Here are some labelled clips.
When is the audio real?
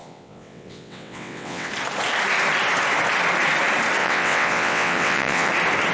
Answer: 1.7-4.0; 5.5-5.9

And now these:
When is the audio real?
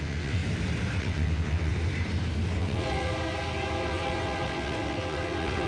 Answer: 0.4-1.0; 1.7-2.6; 3.1-3.8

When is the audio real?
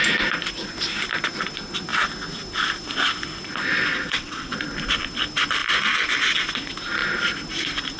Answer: 0.0-3.9; 4.5-8.0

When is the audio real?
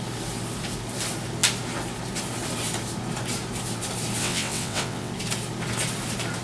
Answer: 0.0-4.2; 5.1-6.4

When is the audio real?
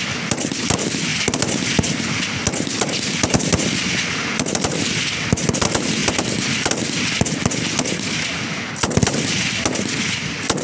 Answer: 0.0-10.6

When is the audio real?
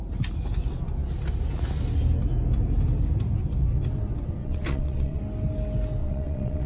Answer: 0.0-4.4; 5.2-6.0